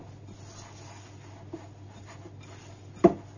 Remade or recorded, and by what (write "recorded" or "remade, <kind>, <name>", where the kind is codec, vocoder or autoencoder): recorded